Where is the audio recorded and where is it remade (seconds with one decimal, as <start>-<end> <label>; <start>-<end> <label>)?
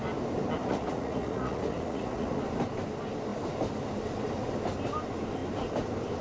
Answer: 0.0-0.6 recorded; 0.6-2.4 remade; 2.4-6.2 recorded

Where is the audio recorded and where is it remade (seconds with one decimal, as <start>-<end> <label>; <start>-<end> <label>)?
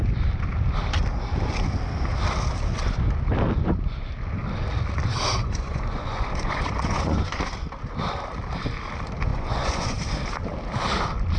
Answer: 0.0-5.4 recorded; 5.4-7.4 remade; 7.4-9.3 recorded; 9.3-10.0 remade; 10.0-11.4 recorded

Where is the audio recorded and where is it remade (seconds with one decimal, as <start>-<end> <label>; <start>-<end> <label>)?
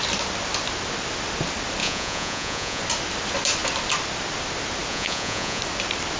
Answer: 0.0-1.8 recorded; 1.8-2.8 remade; 2.8-4.9 recorded; 4.9-5.6 remade; 5.6-6.2 recorded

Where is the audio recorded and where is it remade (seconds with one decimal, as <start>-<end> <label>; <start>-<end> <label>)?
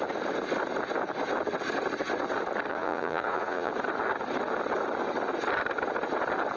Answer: 0.0-2.7 recorded; 2.7-3.7 remade; 3.7-6.6 recorded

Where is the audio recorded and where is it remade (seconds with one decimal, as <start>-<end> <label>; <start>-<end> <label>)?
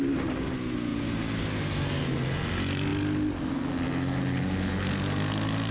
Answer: 0.0-5.7 recorded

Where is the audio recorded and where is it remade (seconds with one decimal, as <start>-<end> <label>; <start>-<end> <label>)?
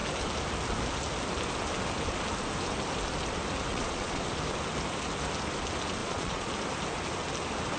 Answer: 0.0-3.7 recorded; 3.7-4.2 remade; 4.2-6.0 recorded; 6.0-6.5 remade; 6.5-7.8 recorded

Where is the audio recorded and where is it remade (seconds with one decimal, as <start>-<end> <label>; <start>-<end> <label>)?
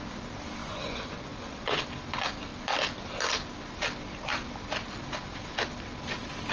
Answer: 0.0-0.6 recorded; 0.6-1.8 remade; 1.8-6.5 recorded